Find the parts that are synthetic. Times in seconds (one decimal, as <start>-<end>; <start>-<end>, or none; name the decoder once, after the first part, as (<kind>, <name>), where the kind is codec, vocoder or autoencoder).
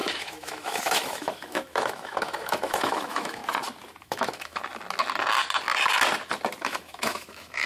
0.0-3.4 (autoencoder, DAC-VAE); 4.0-4.6; 6.6-7.7